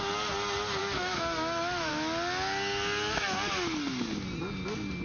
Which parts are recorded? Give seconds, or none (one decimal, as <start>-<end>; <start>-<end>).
0.0-0.8; 1.9-5.0